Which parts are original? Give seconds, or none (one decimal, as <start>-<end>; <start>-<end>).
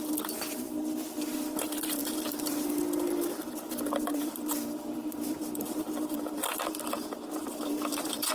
0.8-1.6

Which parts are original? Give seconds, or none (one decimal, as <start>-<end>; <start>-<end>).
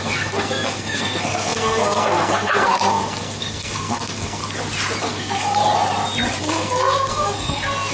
4.4-5.0; 5.6-6.4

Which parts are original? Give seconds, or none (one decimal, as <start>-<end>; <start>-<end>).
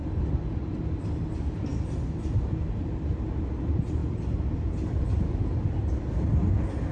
0.0-6.9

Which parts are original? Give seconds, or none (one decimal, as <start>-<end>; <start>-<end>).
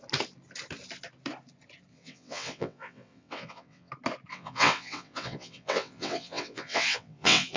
0.0-1.9; 3.9-4.3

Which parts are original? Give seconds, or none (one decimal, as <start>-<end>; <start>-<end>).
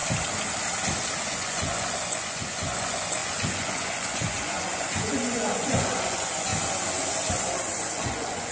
0.0-1.2; 6.5-7.3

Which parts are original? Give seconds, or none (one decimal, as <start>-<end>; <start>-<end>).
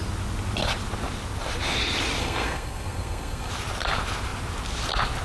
0.0-2.2; 3.5-5.2